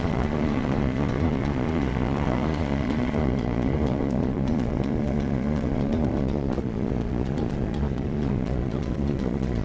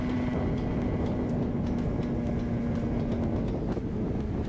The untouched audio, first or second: second